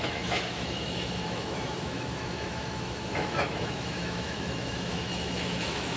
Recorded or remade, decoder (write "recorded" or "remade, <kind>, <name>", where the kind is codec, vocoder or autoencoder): remade, autoencoder, DAC-VAE